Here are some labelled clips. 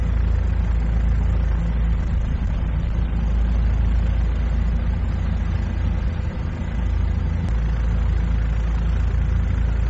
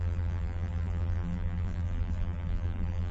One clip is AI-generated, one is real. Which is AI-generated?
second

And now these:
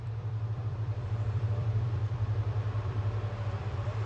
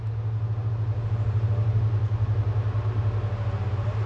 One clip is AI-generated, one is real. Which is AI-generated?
first